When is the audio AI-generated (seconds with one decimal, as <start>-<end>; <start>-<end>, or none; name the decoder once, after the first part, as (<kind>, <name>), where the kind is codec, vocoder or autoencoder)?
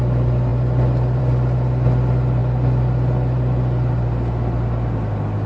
none